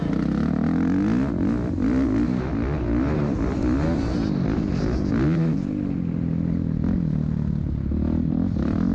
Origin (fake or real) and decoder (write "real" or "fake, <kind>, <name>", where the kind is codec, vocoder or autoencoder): real